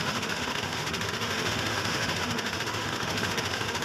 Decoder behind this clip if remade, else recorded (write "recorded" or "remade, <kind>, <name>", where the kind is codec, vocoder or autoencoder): remade, autoencoder, DAC-VAE